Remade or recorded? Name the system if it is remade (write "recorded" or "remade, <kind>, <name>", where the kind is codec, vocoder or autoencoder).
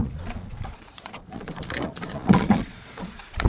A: remade, vocoder, Vocos